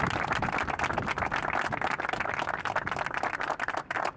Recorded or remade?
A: recorded